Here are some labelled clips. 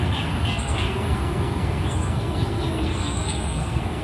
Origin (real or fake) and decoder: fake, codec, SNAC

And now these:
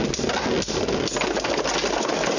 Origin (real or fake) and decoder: real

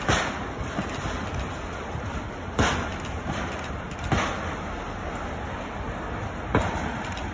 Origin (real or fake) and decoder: real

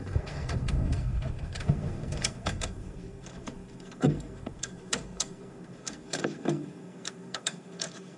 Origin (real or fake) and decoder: fake, codec, SNAC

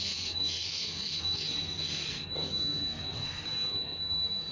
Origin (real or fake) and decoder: fake, codec, SNAC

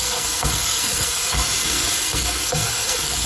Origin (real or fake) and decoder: fake, codec, SNAC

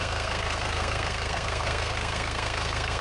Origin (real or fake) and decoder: fake, codec, SNAC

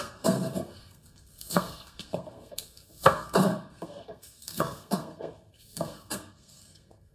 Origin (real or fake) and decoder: fake, codec, SNAC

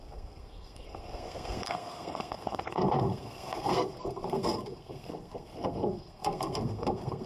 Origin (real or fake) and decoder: fake, codec, SNAC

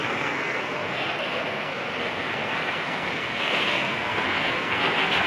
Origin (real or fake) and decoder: fake, codec, SNAC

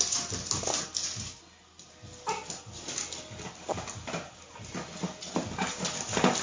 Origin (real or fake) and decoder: real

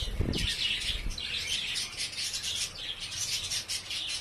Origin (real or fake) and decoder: real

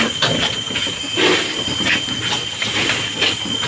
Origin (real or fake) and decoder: real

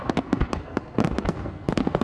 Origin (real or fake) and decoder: fake, codec, SNAC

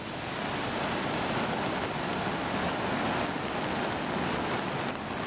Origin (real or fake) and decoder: real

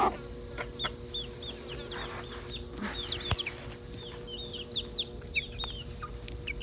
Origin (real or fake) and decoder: real